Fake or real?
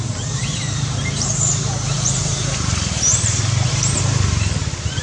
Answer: fake